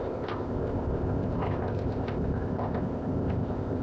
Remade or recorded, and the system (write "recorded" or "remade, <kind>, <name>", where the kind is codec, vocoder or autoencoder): remade, codec, ZipCodec